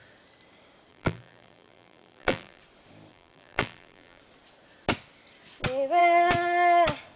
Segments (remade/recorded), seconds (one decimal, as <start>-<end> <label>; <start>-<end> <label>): 0.0-0.9 recorded; 0.9-2.6 remade; 2.6-3.1 recorded; 3.1-4.2 remade; 4.2-7.2 recorded